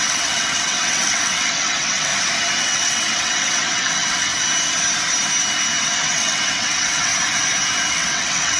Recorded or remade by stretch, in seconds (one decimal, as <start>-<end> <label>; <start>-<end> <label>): 0.0-2.1 remade; 2.1-2.6 recorded; 2.6-4.3 remade; 4.3-5.8 recorded; 5.8-7.1 remade; 7.1-7.9 recorded; 7.9-8.6 remade

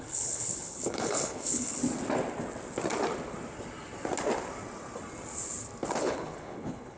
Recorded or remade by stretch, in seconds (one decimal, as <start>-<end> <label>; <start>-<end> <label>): 0.0-1.8 remade; 1.8-6.0 recorded; 6.0-7.0 remade

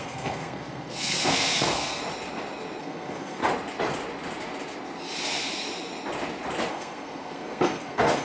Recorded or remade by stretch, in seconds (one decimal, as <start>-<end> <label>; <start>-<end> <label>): 0.0-2.0 remade; 2.0-2.8 recorded; 2.8-3.4 remade; 3.4-6.7 recorded; 6.7-8.2 remade

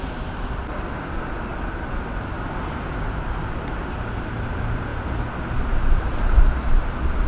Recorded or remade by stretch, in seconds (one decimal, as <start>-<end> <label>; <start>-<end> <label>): 0.0-7.3 recorded

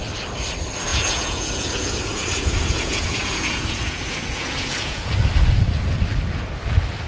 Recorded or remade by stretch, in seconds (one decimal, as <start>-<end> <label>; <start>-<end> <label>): 0.0-0.9 recorded; 0.9-5.1 remade; 5.1-7.1 recorded

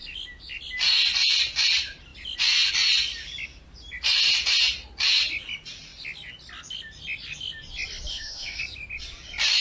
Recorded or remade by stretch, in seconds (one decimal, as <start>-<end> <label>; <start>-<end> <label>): 0.0-8.1 recorded; 8.1-8.6 remade; 8.6-9.6 recorded

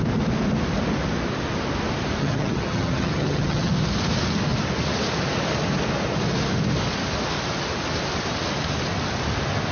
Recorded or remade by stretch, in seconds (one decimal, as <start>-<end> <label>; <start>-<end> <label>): 0.0-2.2 recorded; 2.2-3.7 remade; 3.7-9.7 recorded